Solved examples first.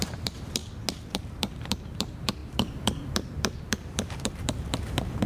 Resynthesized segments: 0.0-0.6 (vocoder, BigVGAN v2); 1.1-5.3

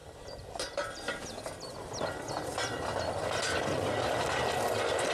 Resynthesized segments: 0.0-1.2 (vocoder, BigVGAN v2)

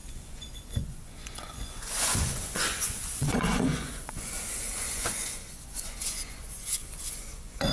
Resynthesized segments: 0.0-7.7 (vocoder, Vocos)

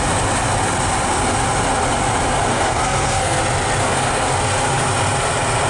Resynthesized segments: 2.5-3.4 (codec, SNAC); 3.8-4.4

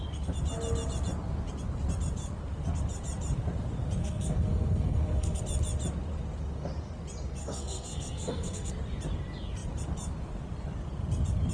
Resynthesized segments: 4.0-5.4 (codec, SNAC); 7.4-8.7